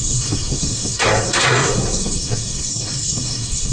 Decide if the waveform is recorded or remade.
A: remade